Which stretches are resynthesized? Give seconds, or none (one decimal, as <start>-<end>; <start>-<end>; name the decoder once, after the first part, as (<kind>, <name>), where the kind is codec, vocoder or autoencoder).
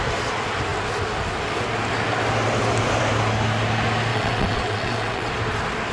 4.1-5.3 (vocoder, WaveNeXt)